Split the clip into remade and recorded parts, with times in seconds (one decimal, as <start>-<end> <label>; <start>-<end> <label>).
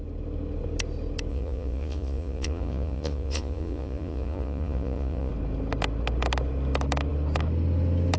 0.0-1.3 recorded; 1.3-5.3 remade; 5.3-8.2 recorded